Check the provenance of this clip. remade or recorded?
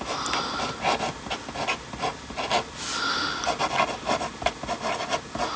recorded